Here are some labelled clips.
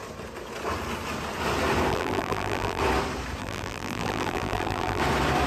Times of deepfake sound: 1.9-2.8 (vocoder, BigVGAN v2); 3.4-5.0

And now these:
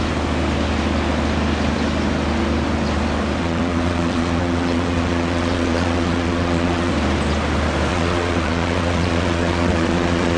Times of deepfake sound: 3.4-6.9 (vocoder, Vocos); 7.9-10.4

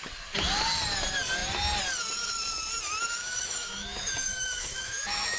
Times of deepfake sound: 3.2-5.4 (autoencoder, DAC-VAE)

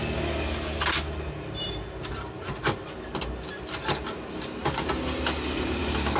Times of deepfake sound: none

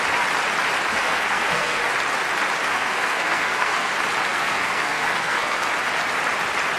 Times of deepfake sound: 0.9-1.8 (codec, SNAC); 2.7-3.9; 4.3-5.7

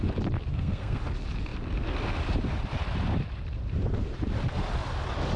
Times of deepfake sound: 0.5-1.0 (codec, SNAC)